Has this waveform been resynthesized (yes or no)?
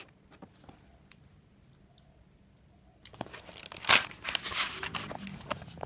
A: no